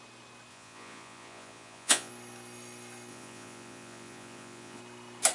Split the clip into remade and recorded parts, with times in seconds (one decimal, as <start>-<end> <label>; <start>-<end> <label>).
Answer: 0.0-0.5 recorded; 0.5-2.1 remade; 2.1-3.1 recorded; 3.1-4.8 remade; 4.8-5.3 recorded